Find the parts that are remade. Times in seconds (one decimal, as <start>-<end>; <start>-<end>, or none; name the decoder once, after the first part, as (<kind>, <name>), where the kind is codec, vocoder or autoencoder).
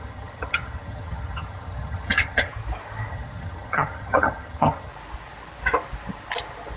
0.0-2.5 (vocoder, HiFi-GAN); 3.1-4.9